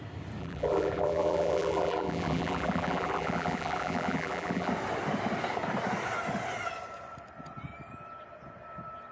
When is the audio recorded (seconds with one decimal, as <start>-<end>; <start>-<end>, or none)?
0.0-0.4; 4.7-9.1